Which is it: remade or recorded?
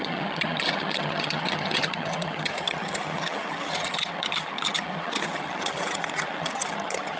remade